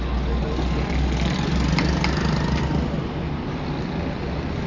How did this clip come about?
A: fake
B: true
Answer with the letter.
B